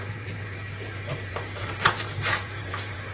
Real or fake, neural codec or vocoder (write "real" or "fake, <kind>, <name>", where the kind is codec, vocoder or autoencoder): fake, vocoder, BigVGAN v2